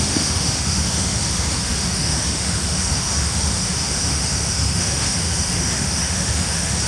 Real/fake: fake